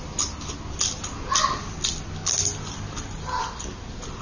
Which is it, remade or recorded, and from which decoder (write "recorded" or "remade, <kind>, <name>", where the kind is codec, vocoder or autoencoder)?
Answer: recorded